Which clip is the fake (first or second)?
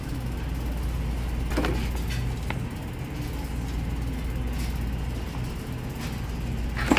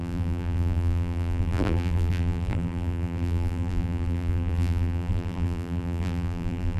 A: second